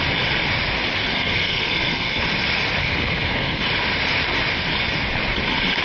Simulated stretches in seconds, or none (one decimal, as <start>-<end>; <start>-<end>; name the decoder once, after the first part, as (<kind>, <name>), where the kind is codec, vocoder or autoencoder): 1.1-2.2 (codec, SNAC); 2.8-3.6

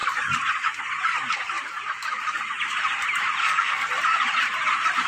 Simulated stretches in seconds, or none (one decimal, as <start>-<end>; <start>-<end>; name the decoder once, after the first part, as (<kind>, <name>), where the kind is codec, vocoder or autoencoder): 3.4-3.9 (codec, SNAC)

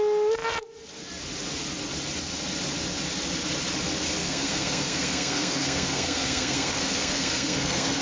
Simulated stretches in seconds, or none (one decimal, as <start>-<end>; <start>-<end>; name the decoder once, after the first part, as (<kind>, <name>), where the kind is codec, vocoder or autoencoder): 4.2-8.0 (codec, SNAC)

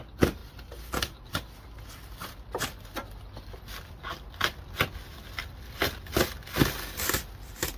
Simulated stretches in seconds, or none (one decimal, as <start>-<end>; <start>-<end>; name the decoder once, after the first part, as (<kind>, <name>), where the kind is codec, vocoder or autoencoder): none

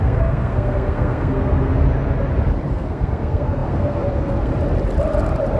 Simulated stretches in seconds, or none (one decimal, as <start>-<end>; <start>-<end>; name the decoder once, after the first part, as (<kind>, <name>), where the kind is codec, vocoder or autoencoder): 0.0-1.7 (codec, SNAC); 2.7-4.5

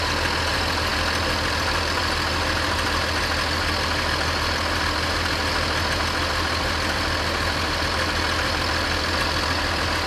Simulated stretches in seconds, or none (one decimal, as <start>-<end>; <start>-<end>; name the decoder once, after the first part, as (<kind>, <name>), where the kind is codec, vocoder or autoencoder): none

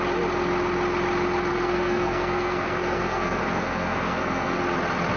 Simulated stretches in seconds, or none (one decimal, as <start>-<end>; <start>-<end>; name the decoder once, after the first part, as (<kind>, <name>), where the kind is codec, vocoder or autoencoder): 1.5-4.6 (codec, SNAC)

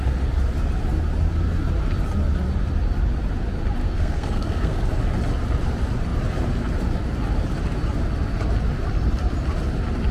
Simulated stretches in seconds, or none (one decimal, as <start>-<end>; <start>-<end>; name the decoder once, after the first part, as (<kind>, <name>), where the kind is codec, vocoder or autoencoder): 3.8-4.9 (codec, SNAC)